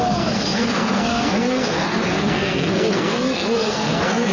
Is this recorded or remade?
remade